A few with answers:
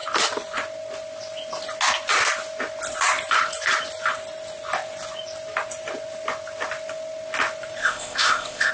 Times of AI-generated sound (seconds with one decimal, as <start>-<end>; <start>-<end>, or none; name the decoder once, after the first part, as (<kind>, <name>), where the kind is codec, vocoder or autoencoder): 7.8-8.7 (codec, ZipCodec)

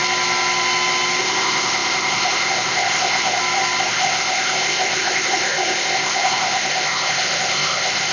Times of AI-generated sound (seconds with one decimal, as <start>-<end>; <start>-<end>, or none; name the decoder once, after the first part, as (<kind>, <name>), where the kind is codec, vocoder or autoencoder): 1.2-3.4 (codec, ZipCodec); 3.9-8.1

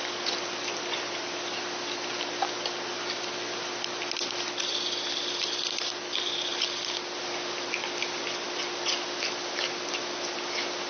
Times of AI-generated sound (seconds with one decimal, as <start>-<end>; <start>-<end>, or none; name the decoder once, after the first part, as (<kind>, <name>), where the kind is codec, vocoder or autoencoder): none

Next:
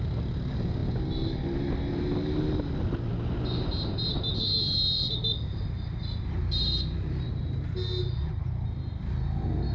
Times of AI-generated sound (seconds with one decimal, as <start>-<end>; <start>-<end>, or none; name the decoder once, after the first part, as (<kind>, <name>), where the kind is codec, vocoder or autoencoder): none

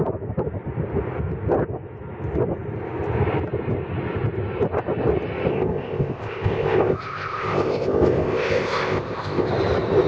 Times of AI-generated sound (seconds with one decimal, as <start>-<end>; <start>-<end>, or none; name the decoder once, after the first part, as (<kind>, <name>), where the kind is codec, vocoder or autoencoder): 5.5-9.5 (codec, ZipCodec)

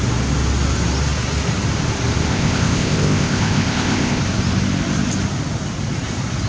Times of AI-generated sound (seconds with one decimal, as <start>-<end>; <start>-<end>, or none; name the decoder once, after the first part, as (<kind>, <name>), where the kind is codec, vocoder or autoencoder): 2.3-4.2 (codec, ZipCodec)

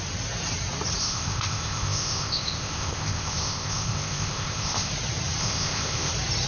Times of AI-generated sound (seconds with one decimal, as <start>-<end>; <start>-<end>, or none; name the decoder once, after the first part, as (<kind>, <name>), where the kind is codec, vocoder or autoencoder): 1.0-4.9 (codec, ZipCodec); 5.4-6.1